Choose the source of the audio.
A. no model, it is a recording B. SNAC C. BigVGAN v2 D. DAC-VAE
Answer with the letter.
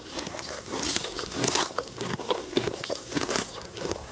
B